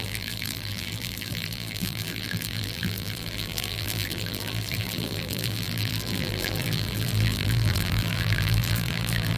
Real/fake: fake